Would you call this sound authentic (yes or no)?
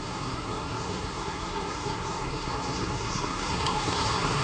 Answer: no